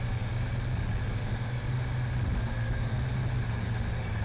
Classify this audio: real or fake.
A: real